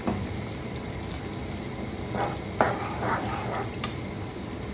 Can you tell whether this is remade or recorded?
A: remade